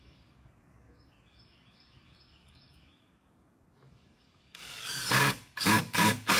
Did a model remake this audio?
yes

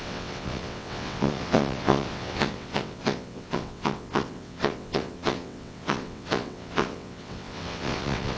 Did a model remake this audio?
yes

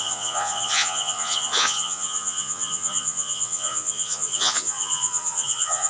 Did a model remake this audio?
yes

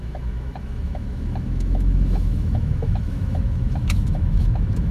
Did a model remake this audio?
yes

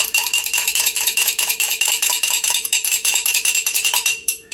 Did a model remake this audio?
yes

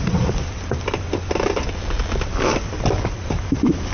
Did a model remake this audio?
no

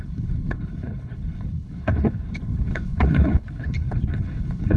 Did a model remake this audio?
yes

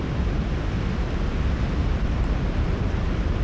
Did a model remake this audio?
no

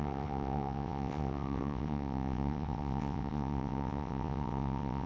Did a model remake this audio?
yes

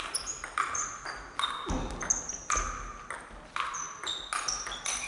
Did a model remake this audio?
no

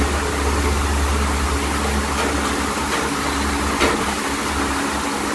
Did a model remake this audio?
no